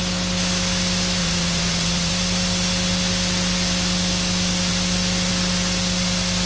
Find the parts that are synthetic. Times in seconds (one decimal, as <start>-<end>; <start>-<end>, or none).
1.2-2.1